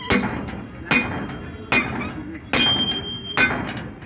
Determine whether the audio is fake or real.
real